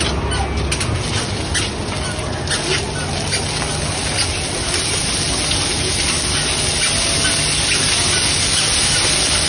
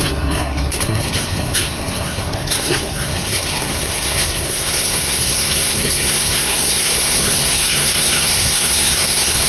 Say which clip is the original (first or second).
first